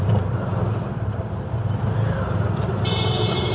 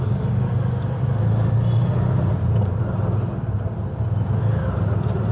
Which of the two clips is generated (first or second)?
first